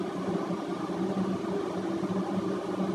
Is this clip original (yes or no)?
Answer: yes